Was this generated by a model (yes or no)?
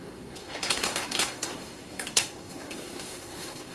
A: yes